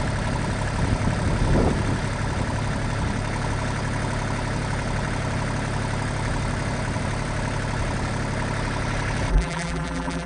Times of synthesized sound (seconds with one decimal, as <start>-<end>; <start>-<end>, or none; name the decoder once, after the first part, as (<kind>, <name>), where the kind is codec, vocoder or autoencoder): 9.3-10.3 (vocoder, BigVGAN v2)